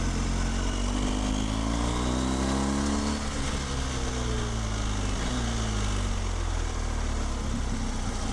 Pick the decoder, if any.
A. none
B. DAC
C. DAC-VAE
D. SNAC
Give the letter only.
A